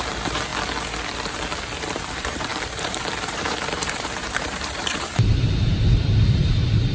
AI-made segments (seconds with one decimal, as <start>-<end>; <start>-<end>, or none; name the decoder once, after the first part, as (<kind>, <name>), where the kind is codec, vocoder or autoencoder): 0.0-0.5 (vocoder, BigVGAN v2); 2.0-6.9